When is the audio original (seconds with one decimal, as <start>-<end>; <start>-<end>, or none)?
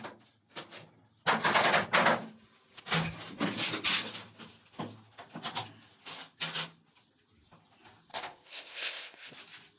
0.0-8.1; 9.3-9.8